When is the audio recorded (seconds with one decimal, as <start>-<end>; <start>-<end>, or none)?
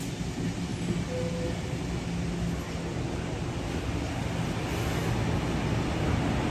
0.0-6.5